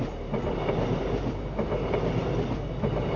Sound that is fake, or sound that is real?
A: real